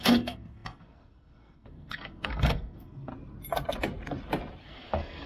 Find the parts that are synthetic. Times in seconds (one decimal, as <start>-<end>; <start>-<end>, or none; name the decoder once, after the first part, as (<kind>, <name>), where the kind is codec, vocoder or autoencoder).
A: 0.0-3.1 (codec, SNAC); 4.6-5.3